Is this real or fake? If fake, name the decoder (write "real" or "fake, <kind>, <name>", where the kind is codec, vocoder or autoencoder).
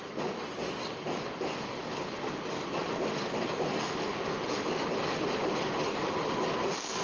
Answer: real